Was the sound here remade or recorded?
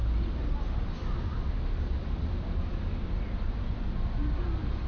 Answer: recorded